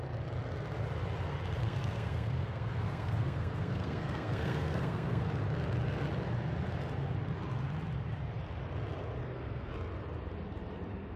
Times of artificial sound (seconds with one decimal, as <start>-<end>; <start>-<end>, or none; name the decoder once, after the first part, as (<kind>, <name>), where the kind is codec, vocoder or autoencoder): 1.6-5.3 (codec, SNAC); 9.2-9.7